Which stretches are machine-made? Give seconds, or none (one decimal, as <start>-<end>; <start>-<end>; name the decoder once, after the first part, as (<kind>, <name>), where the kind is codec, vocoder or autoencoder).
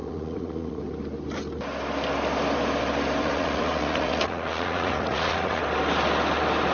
0.0-0.8 (vocoder, Vocos); 3.2-5.6